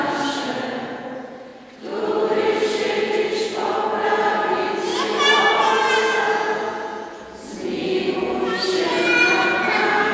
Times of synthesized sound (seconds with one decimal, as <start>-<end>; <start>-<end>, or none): 0.0-1.5; 2.9-4.9; 5.6-10.1